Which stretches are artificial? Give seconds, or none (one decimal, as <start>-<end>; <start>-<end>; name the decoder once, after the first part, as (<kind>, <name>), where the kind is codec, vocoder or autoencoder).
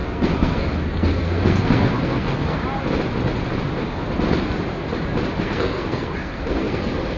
0.0-2.6 (codec, SNAC); 5.4-7.2